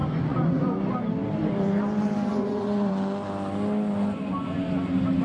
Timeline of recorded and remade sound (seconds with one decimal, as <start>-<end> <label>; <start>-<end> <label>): 0.0-0.8 remade; 0.8-2.3 recorded; 2.3-2.9 remade; 2.9-5.2 recorded

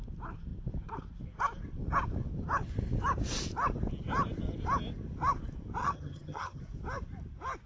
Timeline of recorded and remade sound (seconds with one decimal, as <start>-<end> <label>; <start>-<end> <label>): 0.0-5.8 recorded; 5.8-6.6 remade; 6.6-7.7 recorded